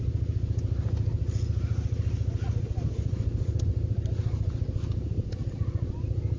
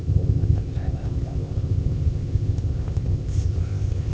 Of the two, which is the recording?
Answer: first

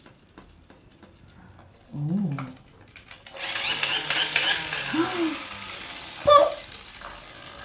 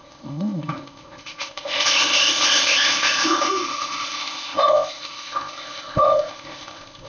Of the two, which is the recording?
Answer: first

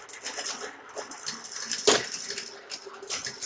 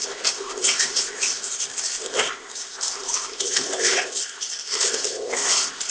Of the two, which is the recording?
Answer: first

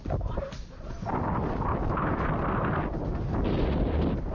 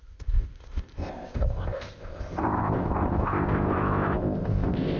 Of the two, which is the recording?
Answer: first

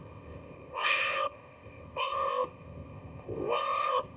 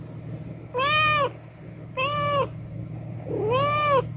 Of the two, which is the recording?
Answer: second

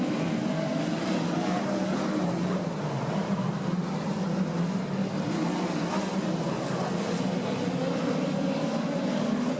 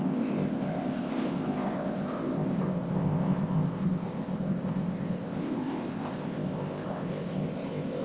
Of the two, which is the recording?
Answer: first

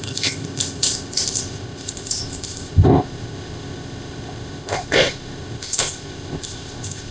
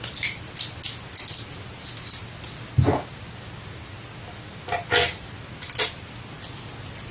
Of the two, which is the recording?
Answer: second